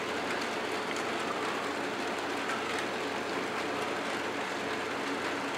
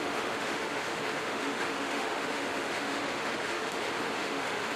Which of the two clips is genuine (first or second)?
first